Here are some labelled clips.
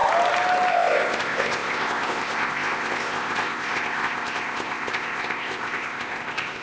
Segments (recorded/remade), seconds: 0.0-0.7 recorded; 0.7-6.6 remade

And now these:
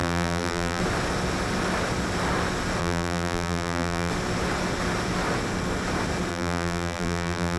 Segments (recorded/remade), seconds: 0.0-0.8 remade; 0.8-2.8 recorded; 2.8-4.1 remade; 4.1-6.3 recorded; 6.3-7.6 remade

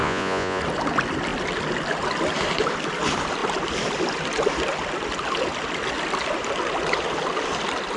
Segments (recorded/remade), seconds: 0.0-0.6 remade; 0.6-8.0 recorded

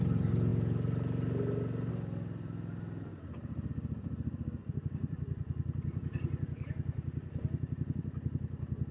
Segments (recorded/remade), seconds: 0.0-0.5 remade; 0.5-1.9 recorded; 1.9-8.9 remade

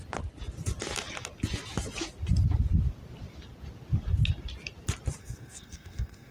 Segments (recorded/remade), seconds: 0.0-5.2 recorded; 5.2-6.3 remade

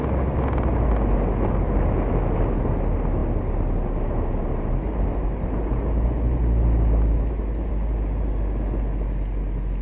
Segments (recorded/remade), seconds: 0.0-9.8 recorded